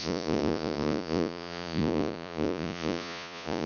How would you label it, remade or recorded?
remade